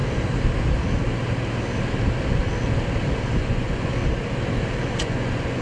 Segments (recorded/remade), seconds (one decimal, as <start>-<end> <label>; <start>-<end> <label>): 0.0-3.4 recorded; 3.4-3.9 remade; 3.9-5.0 recorded; 5.0-5.6 remade